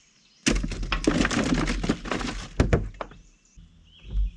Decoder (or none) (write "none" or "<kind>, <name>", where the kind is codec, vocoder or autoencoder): none